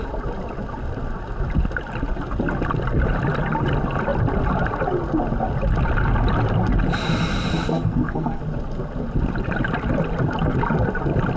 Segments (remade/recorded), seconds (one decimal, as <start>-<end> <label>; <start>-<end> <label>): 0.0-7.7 recorded; 7.7-8.4 remade; 8.4-11.4 recorded